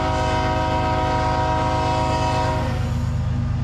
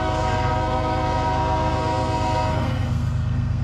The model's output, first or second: second